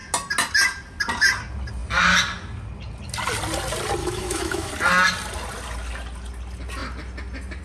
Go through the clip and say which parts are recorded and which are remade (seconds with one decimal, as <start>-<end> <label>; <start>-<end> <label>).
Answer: 0.0-4.0 recorded; 4.0-4.7 remade; 4.7-7.6 recorded